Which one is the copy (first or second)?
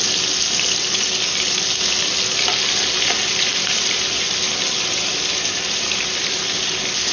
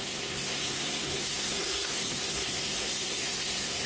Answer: second